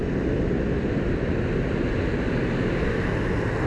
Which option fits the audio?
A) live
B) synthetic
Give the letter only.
A